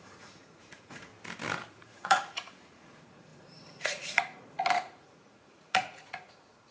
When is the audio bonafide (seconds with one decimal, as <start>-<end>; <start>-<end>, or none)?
1.1-1.7

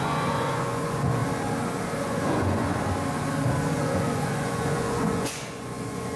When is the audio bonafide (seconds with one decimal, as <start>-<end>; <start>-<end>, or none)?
1.2-2.0; 2.7-3.7

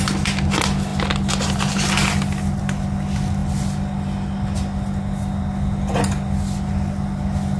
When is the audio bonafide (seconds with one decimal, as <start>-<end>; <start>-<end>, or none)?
0.0-7.6

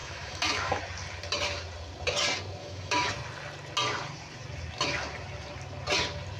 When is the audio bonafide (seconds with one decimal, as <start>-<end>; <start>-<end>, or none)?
0.8-2.6; 3.1-6.4